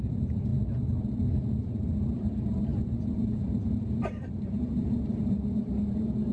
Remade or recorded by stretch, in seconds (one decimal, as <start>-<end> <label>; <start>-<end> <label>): 0.0-0.5 remade; 0.5-1.5 recorded; 1.5-6.3 remade